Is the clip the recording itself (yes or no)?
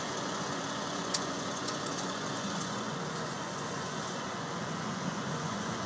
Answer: no